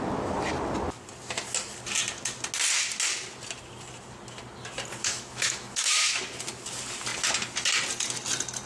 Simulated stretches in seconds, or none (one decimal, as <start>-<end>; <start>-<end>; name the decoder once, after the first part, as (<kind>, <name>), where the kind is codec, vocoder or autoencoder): 5.0-6.2 (autoencoder, DAC-VAE)